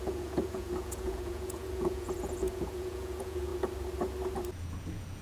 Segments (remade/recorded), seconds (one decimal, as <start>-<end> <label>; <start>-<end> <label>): 0.0-3.5 remade; 3.5-4.5 recorded; 4.5-5.2 remade